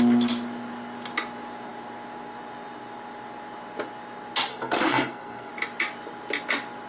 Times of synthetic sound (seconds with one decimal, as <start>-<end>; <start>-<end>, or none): 4.5-5.5